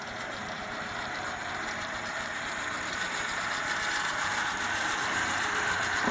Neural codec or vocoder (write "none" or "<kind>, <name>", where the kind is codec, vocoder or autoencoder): vocoder, BigVGAN v2